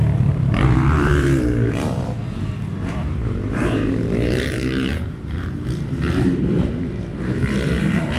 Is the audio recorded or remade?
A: remade